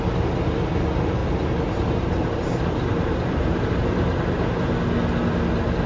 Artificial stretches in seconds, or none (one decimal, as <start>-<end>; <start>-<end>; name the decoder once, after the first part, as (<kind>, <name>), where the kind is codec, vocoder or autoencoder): 1.2-4.7 (vocoder, BigVGAN v2)